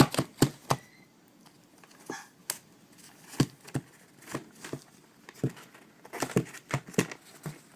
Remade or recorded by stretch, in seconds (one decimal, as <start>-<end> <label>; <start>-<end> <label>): 0.0-7.8 recorded